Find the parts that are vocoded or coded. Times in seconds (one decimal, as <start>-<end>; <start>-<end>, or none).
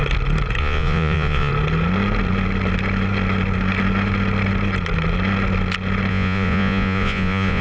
0.6-1.5; 6.1-7.6